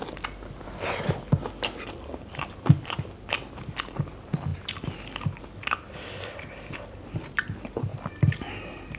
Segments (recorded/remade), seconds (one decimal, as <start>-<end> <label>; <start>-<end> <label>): 0.0-9.0 recorded